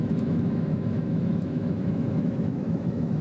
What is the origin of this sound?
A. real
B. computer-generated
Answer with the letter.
B